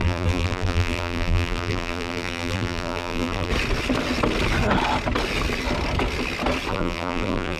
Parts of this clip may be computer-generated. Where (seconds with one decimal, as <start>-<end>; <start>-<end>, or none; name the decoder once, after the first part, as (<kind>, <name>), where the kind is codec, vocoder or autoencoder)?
0.0-3.5 (vocoder, BigVGAN v2); 6.7-7.6